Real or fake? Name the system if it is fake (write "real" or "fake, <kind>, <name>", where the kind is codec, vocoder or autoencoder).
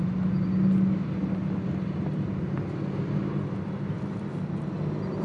real